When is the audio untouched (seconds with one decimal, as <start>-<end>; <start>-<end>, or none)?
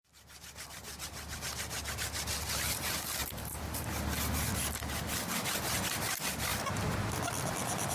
0.0-3.2; 5.3-6.5; 7.3-7.9